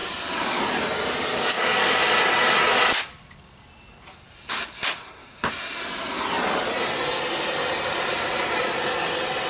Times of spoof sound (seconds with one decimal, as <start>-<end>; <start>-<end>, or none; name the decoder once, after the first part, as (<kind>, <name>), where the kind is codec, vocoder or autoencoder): 0.0-0.6 (codec, DAC); 1.3-1.9